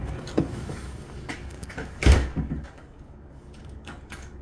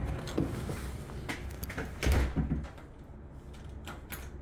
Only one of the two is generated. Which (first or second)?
first